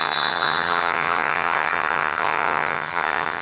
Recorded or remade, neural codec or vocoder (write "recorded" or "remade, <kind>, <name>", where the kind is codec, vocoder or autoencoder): remade, vocoder, HiFi-GAN